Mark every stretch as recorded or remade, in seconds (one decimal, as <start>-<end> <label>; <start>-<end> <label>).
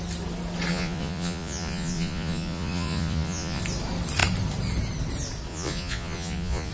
0.0-0.7 recorded; 0.7-3.6 remade; 3.6-5.5 recorded; 5.5-6.7 remade